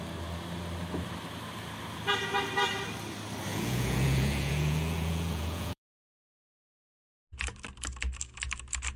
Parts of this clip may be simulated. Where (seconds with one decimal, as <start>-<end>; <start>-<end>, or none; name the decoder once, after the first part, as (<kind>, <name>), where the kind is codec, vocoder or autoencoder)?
3.5-7.2 (vocoder, Vocos)